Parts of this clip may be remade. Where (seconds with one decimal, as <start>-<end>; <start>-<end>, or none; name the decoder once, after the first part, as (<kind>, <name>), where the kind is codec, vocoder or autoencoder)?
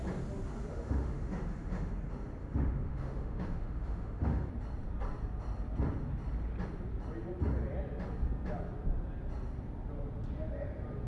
0.7-1.9 (autoencoder, DAC-VAE); 2.4-4.5